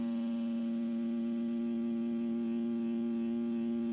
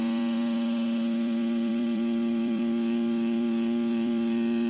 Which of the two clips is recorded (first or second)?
first